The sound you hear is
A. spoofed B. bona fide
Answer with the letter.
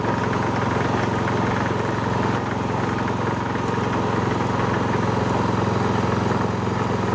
B